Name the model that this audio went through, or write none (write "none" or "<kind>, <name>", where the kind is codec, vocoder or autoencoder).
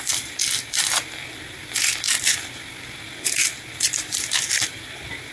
vocoder, BigVGAN v2